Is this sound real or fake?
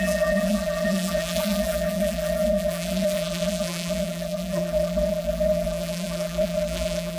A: fake